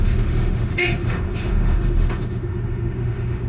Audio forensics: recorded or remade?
remade